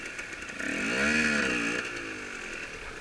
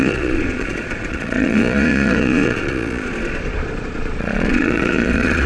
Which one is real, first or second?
first